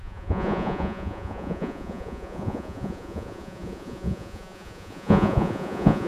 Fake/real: fake